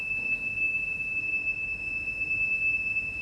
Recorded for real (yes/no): no